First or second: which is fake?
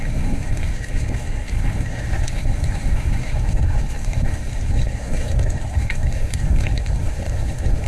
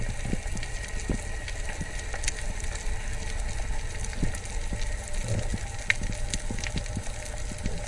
first